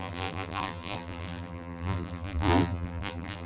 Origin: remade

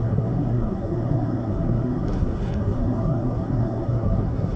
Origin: remade